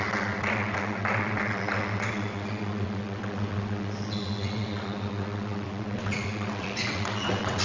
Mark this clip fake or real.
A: fake